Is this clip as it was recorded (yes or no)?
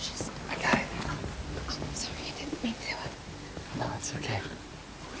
yes